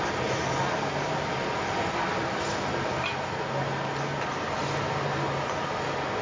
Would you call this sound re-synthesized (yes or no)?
no